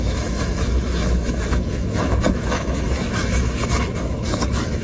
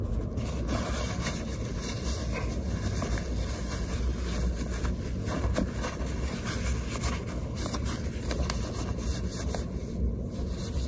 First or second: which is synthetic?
first